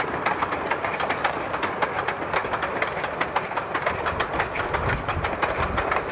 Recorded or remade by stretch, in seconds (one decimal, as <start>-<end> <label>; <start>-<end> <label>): 0.0-6.1 recorded